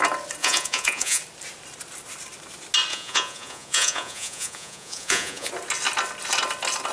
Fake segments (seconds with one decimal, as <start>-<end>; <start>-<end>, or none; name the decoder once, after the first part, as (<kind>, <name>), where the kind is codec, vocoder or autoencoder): 0.4-1.2 (vocoder, Vocos); 2.9-5.5